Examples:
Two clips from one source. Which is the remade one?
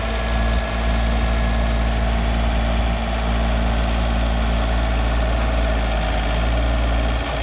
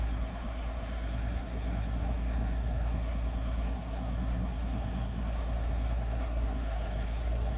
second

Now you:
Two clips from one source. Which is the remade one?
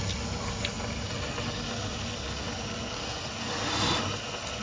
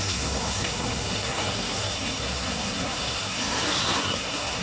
second